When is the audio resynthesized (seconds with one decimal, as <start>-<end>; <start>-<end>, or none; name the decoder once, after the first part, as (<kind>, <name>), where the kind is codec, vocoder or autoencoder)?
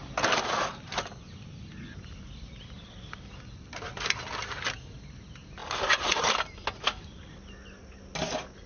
none